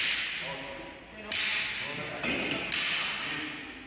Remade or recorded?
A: recorded